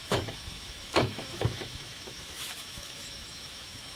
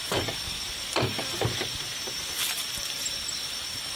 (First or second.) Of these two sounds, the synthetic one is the first